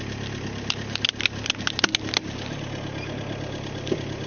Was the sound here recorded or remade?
recorded